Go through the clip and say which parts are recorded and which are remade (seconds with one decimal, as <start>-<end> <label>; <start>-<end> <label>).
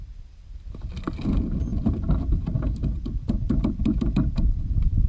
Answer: 0.0-5.1 recorded